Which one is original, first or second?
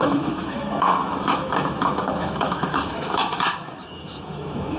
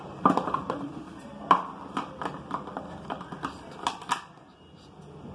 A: second